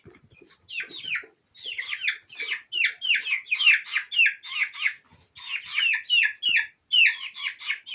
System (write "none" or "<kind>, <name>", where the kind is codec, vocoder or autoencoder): none